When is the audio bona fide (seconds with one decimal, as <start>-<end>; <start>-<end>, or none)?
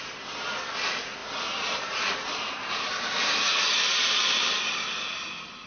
0.0-1.2; 4.6-5.7